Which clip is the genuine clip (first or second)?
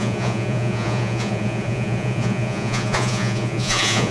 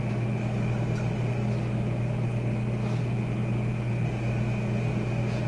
second